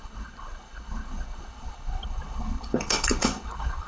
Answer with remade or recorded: remade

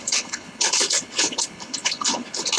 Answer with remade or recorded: remade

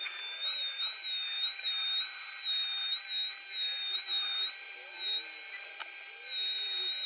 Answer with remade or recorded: recorded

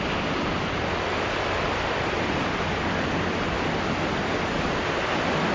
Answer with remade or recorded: recorded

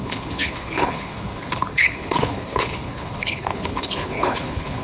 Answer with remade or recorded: remade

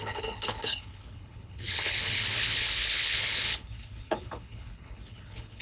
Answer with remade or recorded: remade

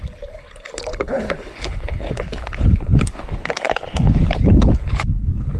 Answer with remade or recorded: remade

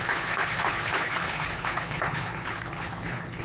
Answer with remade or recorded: remade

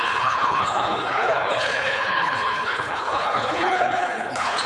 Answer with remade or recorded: remade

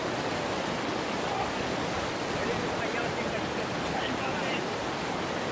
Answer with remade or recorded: recorded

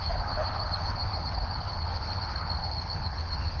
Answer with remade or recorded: remade